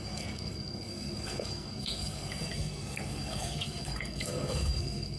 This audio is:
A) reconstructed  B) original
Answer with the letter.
A